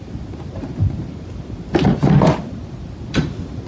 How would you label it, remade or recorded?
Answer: recorded